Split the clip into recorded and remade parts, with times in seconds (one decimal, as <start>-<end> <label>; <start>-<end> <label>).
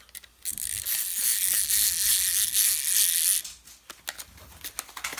0.0-5.2 recorded